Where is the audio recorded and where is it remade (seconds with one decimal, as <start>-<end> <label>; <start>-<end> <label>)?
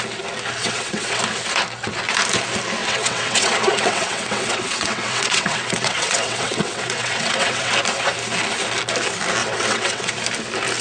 0.0-0.6 recorded; 0.6-1.2 remade; 1.2-2.8 recorded; 2.8-7.7 remade; 7.7-9.4 recorded; 9.4-10.1 remade; 10.1-10.8 recorded